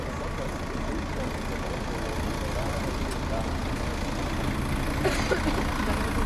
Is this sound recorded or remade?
recorded